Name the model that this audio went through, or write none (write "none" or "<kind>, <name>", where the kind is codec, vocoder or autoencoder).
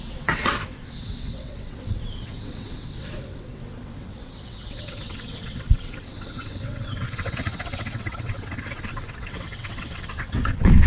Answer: vocoder, WaveNeXt